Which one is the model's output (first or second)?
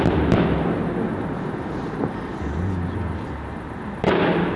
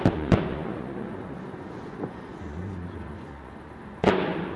second